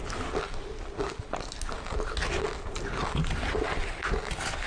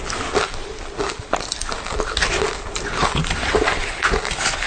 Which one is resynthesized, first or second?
second